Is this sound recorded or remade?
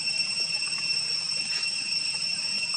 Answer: remade